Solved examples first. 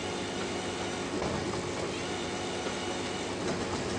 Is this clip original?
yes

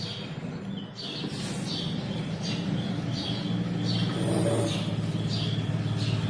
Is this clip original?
yes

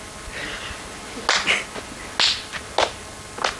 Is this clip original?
yes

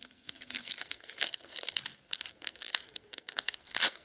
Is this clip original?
no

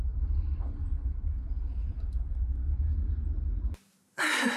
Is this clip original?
yes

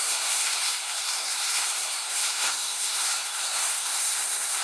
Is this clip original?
no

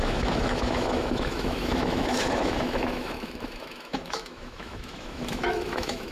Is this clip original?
no